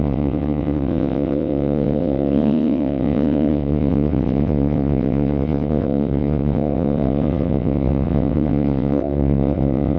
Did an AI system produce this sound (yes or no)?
yes